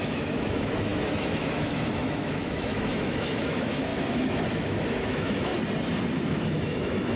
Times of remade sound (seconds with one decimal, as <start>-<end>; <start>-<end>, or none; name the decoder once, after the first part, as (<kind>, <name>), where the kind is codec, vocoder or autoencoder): 0.0-5.5 (autoencoder, DAC-VAE); 6.2-7.2